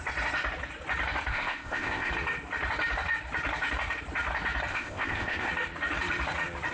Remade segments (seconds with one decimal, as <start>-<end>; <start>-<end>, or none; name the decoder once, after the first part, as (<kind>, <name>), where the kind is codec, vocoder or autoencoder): 1.3-2.1 (codec, ZipCodec); 4.7-5.5